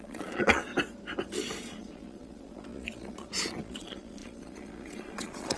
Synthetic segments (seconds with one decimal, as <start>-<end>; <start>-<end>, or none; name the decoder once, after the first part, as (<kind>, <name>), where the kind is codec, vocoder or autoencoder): 0.0-0.7 (vocoder, Vocos); 1.6-5.6